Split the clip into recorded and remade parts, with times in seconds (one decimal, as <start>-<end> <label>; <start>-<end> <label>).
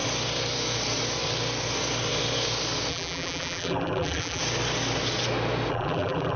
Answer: 0.0-2.9 recorded; 2.9-4.4 remade; 4.4-5.7 recorded; 5.7-6.4 remade